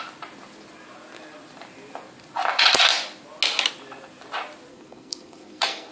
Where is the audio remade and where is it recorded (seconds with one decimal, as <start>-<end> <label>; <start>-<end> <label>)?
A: 0.0-4.7 recorded; 4.7-5.9 remade